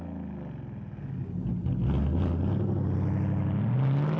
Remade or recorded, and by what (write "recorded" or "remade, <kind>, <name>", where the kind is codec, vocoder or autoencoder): recorded